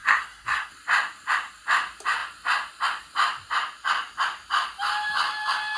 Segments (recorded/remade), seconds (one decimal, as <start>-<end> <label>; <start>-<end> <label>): 0.0-0.7 remade; 0.7-5.8 recorded